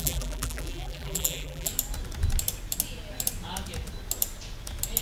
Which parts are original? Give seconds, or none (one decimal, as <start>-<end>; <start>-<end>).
1.7-5.0